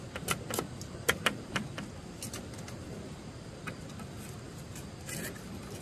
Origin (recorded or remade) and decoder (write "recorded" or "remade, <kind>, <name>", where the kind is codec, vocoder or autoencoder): recorded